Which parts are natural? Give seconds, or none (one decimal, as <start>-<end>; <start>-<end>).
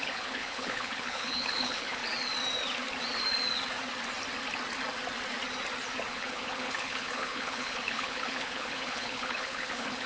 2.0-6.1